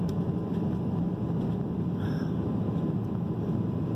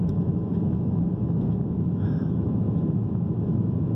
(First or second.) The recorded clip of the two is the first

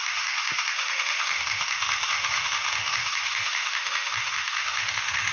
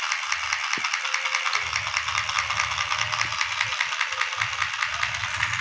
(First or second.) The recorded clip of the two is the second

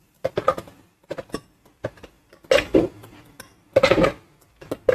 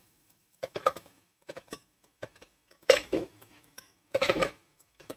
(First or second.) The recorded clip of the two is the first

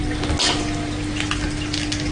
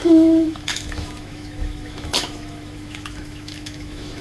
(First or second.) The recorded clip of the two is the first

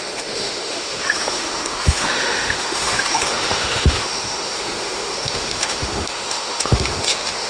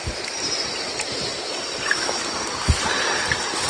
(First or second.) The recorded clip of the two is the second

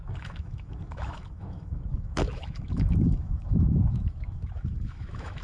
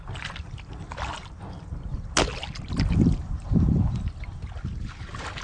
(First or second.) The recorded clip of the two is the second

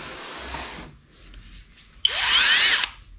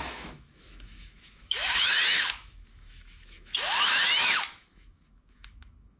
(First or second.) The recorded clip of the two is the first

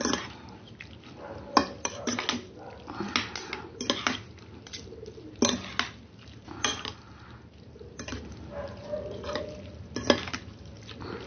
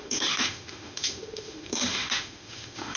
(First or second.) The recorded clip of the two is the first